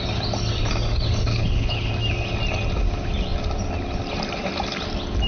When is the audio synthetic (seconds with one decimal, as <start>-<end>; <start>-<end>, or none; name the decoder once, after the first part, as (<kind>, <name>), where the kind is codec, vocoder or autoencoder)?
1.3-1.9 (codec, HILCodec)